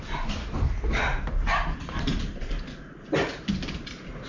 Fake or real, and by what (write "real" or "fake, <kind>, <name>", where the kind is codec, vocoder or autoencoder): real